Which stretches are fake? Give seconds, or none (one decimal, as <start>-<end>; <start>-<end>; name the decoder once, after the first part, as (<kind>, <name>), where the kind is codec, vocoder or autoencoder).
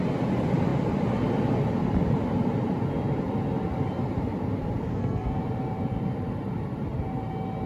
4.9-5.4 (codec, SNAC)